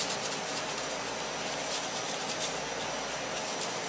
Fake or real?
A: real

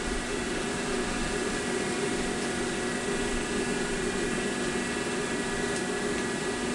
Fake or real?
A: real